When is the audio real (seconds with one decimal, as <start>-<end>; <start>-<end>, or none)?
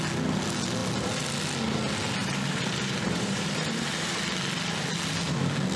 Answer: 0.0-2.2; 4.2-5.8